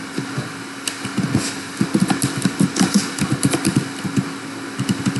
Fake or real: real